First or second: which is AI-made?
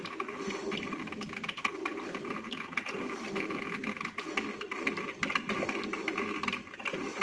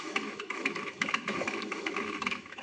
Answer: second